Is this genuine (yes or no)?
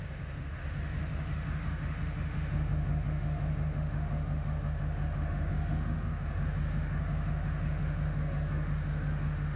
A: no